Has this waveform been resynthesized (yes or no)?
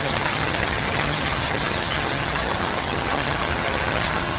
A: yes